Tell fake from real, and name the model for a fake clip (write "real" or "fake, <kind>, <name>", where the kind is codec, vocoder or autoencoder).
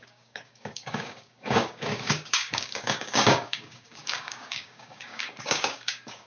fake, codec, DAC